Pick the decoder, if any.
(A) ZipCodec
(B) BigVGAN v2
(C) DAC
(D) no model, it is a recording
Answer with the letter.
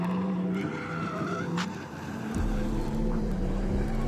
B